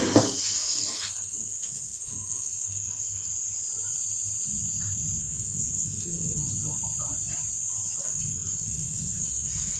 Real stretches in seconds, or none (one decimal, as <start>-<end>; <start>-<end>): 3.3-5.2; 6.4-8.0